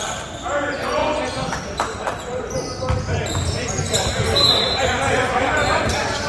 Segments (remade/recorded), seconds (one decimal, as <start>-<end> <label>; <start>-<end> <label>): 0.0-6.3 recorded